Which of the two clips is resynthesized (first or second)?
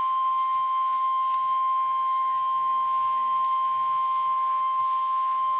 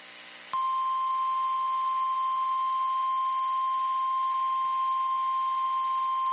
first